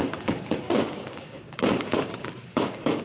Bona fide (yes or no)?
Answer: no